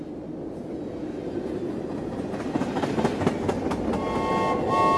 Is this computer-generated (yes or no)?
no